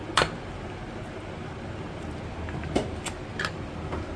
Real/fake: real